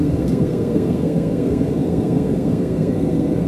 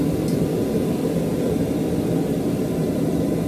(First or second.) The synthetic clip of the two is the first